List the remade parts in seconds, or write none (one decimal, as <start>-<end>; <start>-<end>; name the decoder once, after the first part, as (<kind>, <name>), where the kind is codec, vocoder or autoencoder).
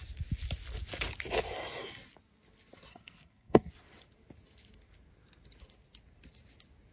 2.9-3.7 (codec, SNAC)